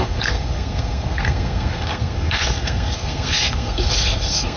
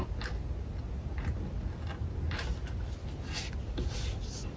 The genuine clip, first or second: second